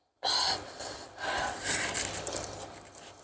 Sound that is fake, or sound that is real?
real